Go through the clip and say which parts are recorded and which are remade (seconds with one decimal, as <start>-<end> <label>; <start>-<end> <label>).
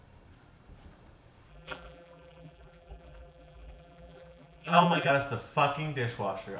0.0-1.5 recorded; 1.5-5.1 remade; 5.1-6.6 recorded